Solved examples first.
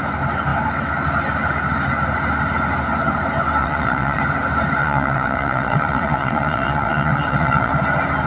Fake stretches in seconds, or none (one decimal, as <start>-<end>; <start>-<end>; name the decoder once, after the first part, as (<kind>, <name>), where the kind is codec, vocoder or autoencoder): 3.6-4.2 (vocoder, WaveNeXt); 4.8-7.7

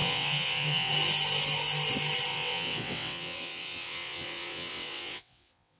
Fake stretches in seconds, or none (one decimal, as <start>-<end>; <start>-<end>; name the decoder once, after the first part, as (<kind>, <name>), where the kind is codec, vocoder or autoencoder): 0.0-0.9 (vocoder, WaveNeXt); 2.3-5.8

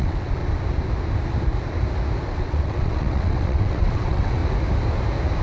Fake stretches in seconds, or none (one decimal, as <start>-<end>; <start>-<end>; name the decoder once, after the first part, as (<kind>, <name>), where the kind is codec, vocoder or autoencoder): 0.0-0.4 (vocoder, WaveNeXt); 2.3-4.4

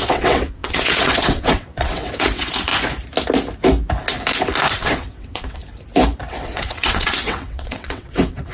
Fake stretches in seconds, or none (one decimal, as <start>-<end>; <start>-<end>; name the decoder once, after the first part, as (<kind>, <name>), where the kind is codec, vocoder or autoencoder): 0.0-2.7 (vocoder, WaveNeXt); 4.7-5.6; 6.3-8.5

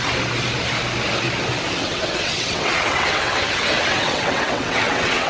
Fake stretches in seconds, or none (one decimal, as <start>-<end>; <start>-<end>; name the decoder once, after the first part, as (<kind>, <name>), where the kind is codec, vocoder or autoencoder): 1.8-5.3 (vocoder, WaveNeXt)

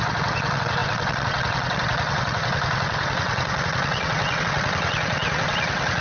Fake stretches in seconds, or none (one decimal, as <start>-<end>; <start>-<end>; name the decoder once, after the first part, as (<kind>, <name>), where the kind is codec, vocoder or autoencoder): 0.0-6.0 (vocoder, WaveNeXt)